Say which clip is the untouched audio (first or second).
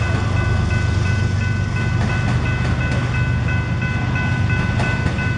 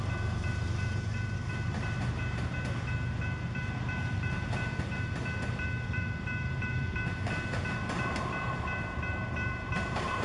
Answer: first